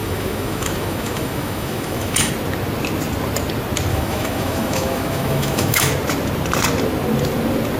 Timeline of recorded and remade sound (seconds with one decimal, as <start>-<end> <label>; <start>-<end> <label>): 0.0-2.3 remade; 2.3-3.9 recorded; 3.9-5.9 remade; 5.9-7.8 recorded